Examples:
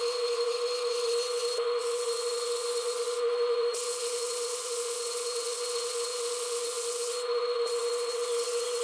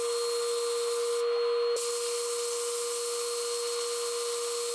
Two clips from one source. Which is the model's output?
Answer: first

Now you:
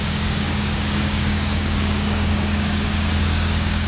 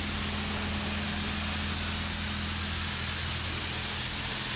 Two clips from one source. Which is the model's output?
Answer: first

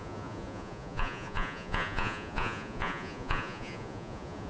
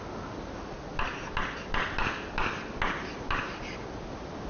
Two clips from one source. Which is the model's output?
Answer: first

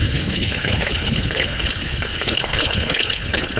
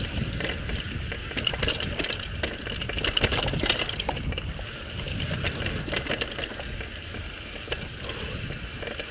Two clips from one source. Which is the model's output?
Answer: first